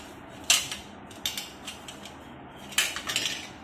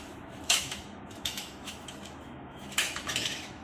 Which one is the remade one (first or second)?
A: second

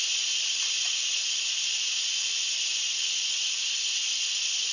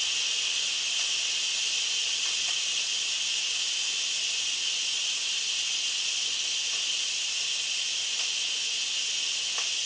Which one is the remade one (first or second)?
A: first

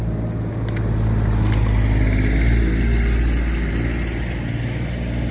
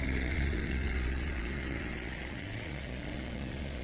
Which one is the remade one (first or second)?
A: second